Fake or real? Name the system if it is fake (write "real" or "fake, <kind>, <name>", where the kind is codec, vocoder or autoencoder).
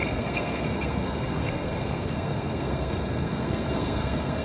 fake, codec, SNAC